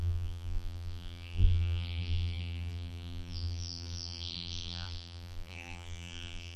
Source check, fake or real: fake